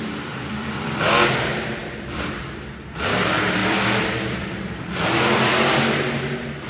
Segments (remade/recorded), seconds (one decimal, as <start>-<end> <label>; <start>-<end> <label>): 0.0-1.1 remade; 1.1-1.8 recorded; 1.8-2.4 remade; 2.4-3.6 recorded; 3.6-4.9 remade; 4.9-6.7 recorded